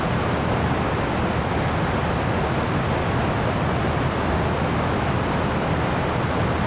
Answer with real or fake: real